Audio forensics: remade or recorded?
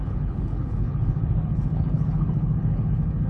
remade